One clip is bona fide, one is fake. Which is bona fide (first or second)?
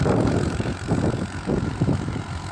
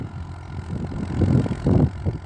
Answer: second